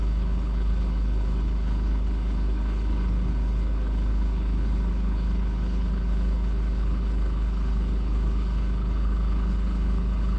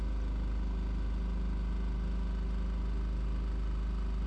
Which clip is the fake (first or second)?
first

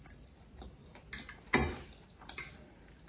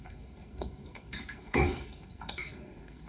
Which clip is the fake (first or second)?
second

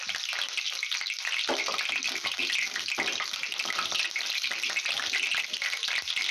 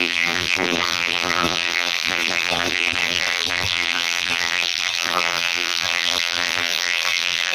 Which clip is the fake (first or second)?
second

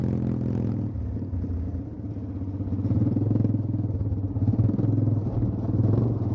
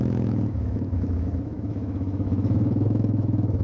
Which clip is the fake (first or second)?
second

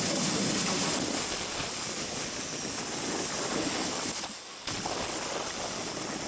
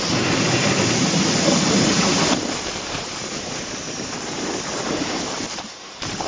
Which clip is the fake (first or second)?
second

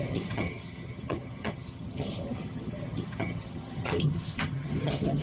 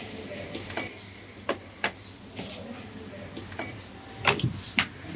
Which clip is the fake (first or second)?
first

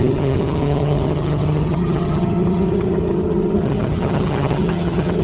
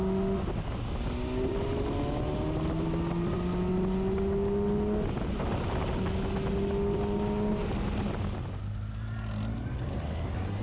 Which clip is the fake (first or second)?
first